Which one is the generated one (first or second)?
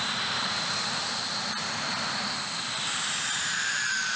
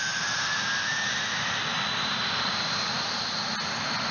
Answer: first